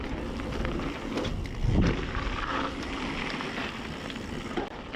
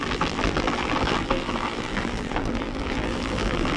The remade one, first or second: second